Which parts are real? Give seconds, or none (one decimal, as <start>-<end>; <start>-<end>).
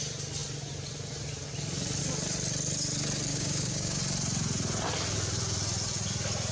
0.0-3.3; 4.0-6.5